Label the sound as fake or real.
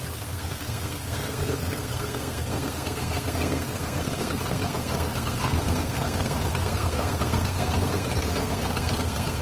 fake